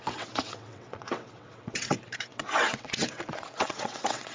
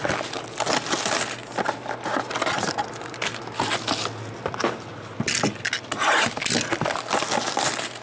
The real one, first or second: second